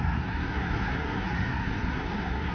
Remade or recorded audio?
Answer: remade